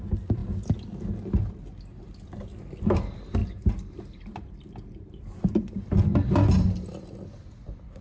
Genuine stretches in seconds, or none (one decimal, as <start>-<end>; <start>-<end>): 0.0-8.0